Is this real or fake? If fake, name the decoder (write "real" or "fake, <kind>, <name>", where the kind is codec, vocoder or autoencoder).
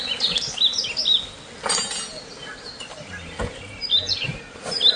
real